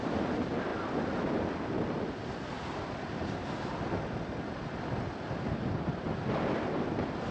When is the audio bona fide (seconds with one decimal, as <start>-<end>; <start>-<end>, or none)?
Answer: 0.0-7.3